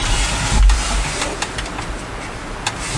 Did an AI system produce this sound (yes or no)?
no